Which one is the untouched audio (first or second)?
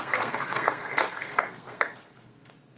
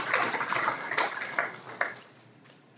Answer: second